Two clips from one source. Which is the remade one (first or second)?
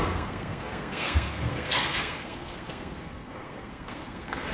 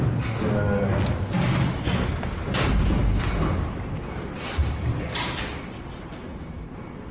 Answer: first